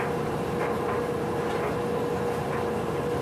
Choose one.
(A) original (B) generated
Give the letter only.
A